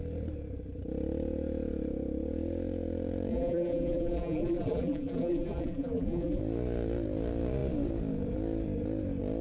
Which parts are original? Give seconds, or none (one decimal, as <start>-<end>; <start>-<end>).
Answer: 0.0-3.3; 6.4-9.4